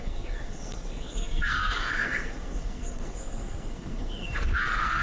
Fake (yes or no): yes